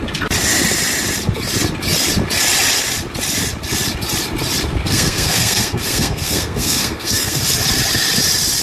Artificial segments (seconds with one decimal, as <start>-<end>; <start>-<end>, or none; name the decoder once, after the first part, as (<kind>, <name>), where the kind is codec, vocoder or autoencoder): 4.8-7.4 (codec, SNAC)